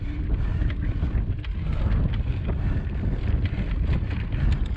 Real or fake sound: real